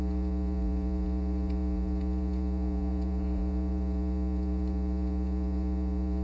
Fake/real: fake